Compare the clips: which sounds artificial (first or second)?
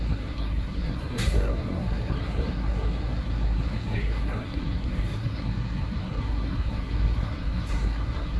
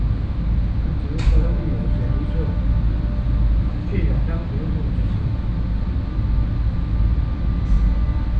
first